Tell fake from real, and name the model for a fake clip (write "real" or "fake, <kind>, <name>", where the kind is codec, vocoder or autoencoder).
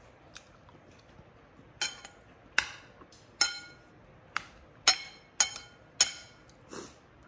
real